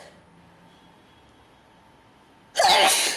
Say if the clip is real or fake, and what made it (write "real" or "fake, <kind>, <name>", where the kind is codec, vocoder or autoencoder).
real